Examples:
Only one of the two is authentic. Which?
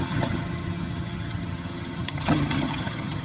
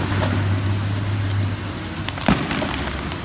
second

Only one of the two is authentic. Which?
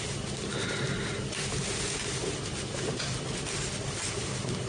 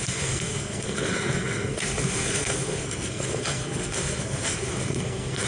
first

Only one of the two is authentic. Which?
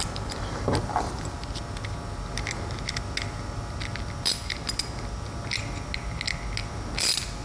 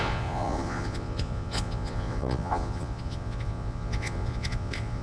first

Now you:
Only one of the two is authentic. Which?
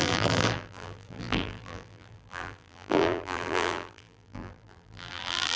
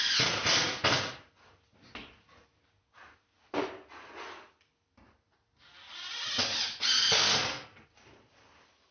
second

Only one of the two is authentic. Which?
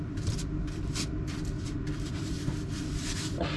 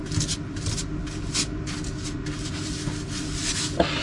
second